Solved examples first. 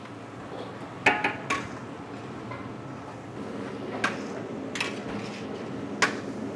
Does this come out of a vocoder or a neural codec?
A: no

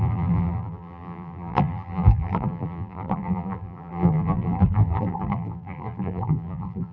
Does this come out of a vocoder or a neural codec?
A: yes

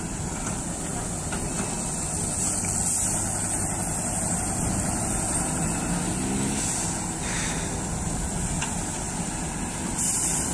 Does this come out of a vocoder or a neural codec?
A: no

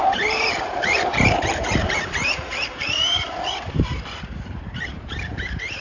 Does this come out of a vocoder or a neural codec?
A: yes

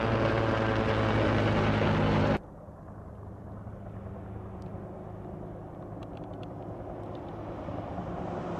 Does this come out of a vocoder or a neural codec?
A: no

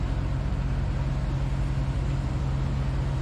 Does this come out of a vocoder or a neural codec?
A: no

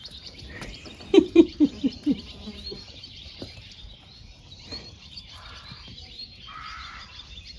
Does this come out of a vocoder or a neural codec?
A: yes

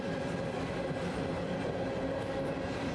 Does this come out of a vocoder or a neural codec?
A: no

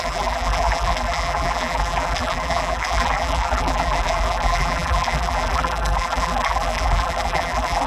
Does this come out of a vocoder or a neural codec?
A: yes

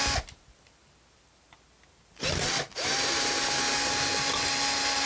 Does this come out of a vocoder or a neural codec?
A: no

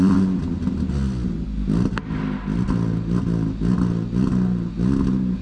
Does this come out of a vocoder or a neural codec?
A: no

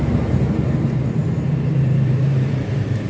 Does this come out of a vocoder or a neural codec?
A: yes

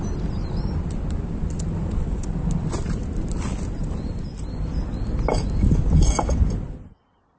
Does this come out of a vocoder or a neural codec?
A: no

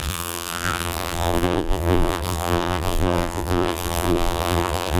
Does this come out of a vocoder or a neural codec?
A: yes